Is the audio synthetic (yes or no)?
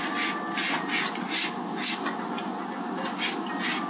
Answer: no